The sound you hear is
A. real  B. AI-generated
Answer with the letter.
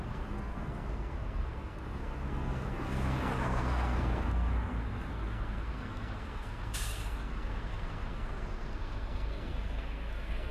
B